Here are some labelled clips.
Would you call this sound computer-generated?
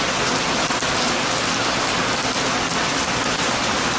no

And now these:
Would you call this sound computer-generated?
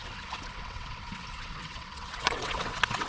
yes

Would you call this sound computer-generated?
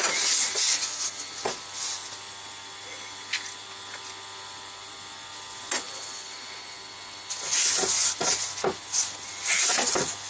no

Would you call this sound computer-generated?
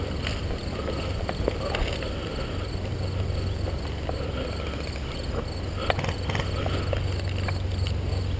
no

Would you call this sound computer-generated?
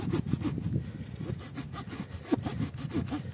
no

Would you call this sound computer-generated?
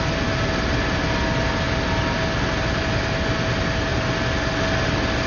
no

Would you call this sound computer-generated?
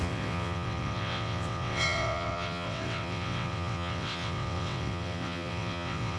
yes